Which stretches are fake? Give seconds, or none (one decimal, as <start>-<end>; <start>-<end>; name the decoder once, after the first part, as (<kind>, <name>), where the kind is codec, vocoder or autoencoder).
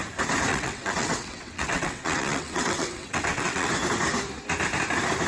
0.5-3.7 (vocoder, WaveNeXt)